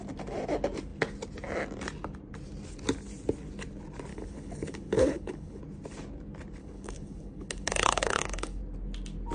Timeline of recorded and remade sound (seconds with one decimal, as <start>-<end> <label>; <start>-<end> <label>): 0.0-4.1 recorded; 4.1-5.6 remade; 5.6-6.6 recorded; 6.6-8.6 remade; 8.6-9.3 recorded